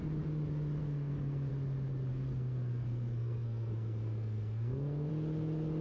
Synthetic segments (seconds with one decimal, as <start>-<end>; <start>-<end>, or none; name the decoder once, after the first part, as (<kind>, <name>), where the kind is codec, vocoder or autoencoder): 0.8-1.5 (codec, SNAC); 2.1-5.1